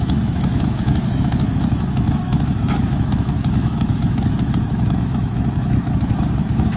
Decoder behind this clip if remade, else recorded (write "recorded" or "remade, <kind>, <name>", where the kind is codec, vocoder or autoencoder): remade, autoencoder, DAC-VAE